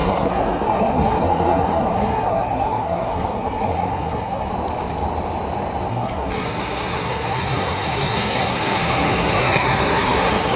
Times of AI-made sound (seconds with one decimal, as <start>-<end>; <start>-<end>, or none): 0.0-4.5; 5.9-10.6